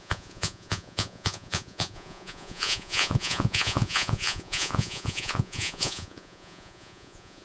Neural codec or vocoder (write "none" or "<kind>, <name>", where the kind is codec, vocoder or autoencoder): vocoder, Vocos